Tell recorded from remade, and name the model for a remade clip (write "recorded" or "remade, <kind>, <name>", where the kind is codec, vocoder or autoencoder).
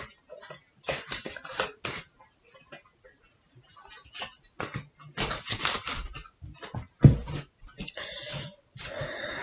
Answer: recorded